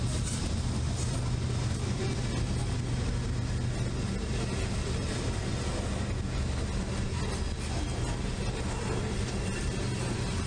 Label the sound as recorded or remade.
recorded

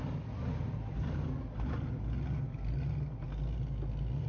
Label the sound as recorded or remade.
recorded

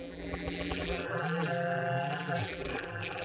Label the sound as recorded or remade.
remade